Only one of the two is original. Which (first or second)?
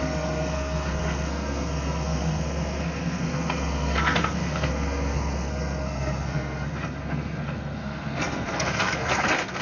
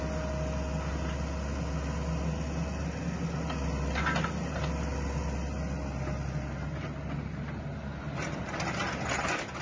second